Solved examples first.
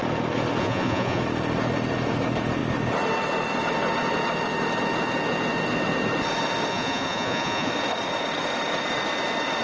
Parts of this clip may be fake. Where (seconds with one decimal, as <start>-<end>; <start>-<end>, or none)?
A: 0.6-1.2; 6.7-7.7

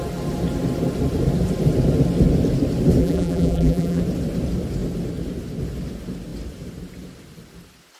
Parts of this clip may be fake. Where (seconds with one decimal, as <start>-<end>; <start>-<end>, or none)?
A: 3.0-4.0

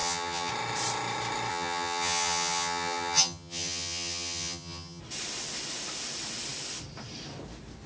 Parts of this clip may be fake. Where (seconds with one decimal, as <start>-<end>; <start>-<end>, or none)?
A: 0.0-0.5; 1.5-5.0

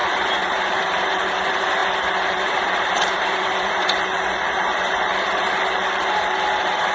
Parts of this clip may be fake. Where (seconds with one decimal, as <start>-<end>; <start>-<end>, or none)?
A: 0.0-6.9

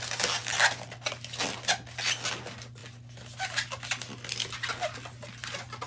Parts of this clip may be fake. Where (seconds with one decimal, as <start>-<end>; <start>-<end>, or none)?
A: none

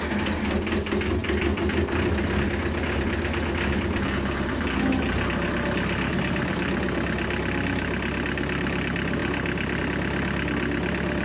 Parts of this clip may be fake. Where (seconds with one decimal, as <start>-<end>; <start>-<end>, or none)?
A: none